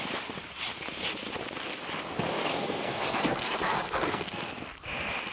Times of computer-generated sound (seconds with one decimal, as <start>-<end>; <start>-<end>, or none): 2.4-4.4